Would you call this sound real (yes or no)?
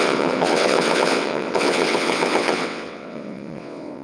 no